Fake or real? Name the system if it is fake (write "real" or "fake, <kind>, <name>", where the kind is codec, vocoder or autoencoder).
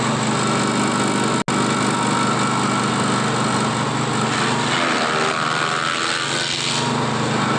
real